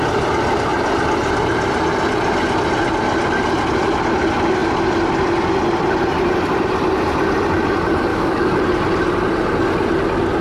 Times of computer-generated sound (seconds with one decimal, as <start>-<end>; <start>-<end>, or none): 8.1-8.6